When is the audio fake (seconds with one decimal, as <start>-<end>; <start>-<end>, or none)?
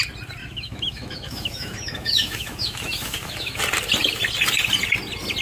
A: 0.4-3.6